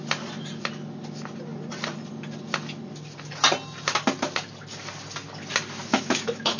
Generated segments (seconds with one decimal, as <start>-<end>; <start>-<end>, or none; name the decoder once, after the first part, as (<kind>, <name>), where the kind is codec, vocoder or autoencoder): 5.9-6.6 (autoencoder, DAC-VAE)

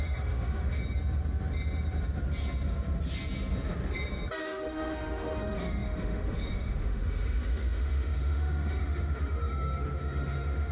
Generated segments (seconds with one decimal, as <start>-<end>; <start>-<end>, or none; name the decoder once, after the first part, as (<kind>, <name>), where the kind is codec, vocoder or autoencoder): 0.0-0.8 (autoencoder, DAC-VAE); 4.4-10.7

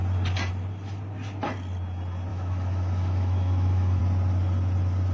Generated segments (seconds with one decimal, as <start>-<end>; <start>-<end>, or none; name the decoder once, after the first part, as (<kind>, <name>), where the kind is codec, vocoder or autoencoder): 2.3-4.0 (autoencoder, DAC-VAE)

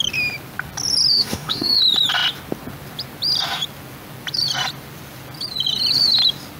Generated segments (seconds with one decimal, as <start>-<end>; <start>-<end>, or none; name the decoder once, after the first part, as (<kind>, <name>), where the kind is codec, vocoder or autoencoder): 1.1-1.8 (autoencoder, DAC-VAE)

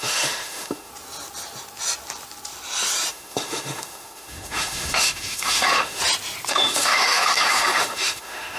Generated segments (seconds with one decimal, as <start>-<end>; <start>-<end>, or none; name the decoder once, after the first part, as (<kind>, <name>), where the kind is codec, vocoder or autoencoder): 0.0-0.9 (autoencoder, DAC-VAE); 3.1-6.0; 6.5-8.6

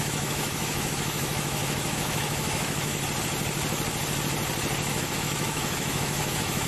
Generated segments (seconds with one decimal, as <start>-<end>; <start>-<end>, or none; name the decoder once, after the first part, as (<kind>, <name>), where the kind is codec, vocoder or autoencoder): 0.0-2.9 (autoencoder, DAC-VAE); 5.0-6.7